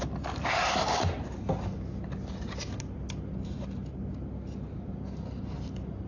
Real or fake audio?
real